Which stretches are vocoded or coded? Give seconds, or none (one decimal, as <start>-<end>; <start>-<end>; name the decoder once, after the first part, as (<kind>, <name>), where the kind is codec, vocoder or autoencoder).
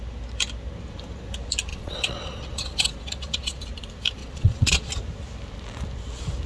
1.7-3.6 (vocoder, Vocos); 4.2-4.9